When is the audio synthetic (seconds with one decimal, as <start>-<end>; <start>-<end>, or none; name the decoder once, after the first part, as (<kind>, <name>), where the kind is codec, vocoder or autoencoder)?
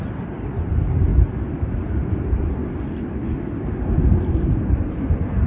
0.0-1.1 (vocoder, BigVGAN v2); 1.7-2.6; 4.3-5.5